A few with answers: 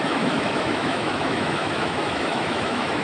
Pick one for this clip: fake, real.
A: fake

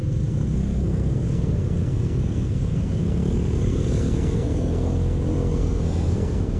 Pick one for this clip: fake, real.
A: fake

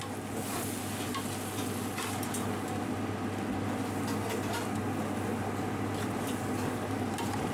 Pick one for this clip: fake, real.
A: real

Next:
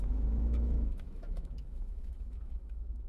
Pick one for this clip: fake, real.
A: fake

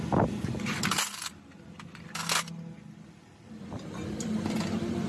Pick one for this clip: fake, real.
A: real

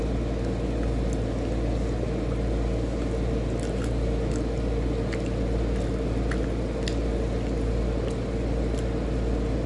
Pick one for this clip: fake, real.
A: real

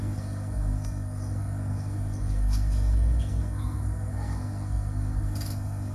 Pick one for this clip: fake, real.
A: fake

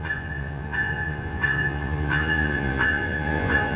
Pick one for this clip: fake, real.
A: fake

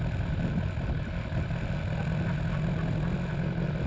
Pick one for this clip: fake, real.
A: real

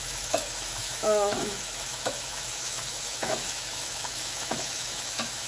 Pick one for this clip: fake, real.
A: fake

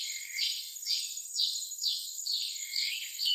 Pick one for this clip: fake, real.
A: fake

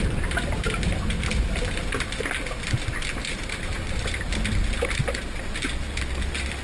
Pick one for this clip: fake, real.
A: real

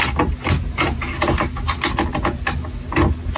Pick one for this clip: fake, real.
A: real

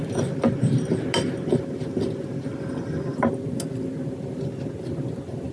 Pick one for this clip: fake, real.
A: real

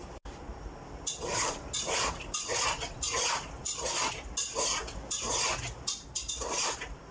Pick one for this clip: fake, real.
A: real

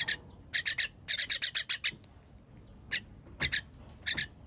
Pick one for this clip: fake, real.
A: real